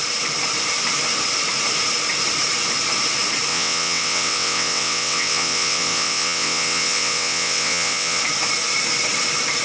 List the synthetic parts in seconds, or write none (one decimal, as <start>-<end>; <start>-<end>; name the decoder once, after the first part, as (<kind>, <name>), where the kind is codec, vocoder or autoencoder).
3.5-8.2 (vocoder, WaveNeXt)

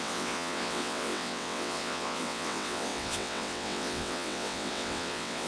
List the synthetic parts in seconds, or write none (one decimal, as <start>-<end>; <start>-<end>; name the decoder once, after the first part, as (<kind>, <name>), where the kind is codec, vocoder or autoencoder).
0.0-5.5 (vocoder, WaveNeXt)

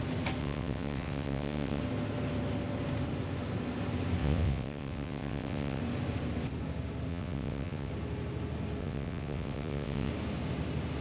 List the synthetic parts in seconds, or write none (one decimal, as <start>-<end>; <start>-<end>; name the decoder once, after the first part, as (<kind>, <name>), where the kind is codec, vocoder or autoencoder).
0.4-1.8 (vocoder, WaveNeXt); 4.2-5.8; 7.1-7.9; 8.8-10.1

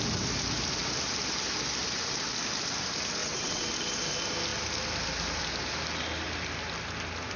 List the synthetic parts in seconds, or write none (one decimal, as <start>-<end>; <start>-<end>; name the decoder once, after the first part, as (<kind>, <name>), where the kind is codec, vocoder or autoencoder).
3.2-3.7 (vocoder, WaveNeXt)

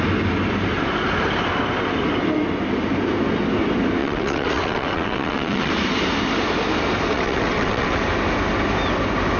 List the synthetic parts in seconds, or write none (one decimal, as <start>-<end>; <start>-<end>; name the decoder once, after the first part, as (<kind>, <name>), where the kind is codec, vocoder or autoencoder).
4.0-5.7 (vocoder, WaveNeXt); 7.1-8.0

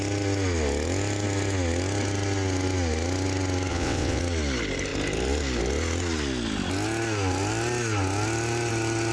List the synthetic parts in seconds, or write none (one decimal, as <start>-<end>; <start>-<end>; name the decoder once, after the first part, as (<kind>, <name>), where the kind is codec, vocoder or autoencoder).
3.7-4.2 (vocoder, WaveNeXt)

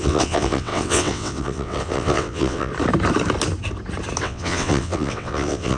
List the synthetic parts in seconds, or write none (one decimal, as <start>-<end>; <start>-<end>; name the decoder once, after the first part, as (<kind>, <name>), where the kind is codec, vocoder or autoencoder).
0.0-2.7 (vocoder, WaveNeXt); 4.2-5.8

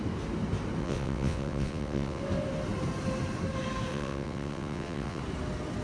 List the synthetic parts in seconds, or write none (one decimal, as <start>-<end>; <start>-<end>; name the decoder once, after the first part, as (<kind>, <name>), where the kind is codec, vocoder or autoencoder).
0.8-2.2 (vocoder, WaveNeXt); 3.9-5.2